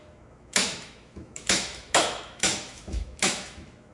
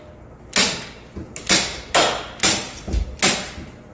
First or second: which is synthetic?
first